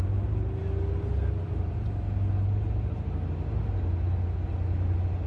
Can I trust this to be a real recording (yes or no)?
yes